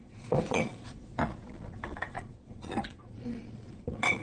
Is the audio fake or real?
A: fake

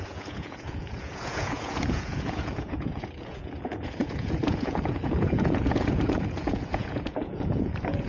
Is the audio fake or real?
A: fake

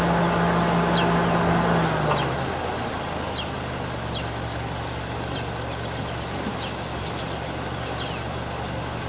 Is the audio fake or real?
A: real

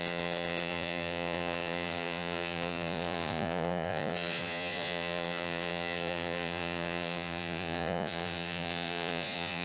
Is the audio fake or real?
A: fake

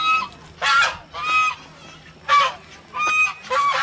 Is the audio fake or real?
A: real